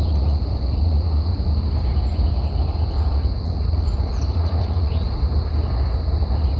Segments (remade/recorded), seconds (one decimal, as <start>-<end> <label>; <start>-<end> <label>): 0.0-1.5 remade; 1.5-2.7 recorded; 2.7-5.3 remade; 5.3-6.6 recorded